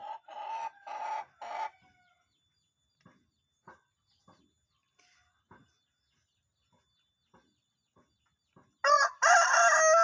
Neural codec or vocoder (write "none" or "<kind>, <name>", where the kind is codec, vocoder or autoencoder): none